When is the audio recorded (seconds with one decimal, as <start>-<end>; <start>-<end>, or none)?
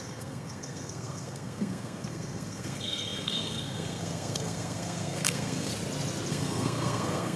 5.7-6.3